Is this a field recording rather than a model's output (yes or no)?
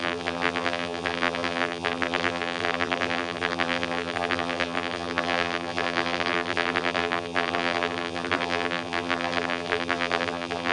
no